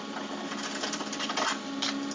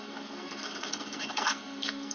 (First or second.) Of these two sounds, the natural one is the first